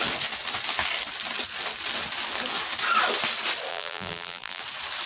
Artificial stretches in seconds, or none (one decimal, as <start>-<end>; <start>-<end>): 3.7-4.6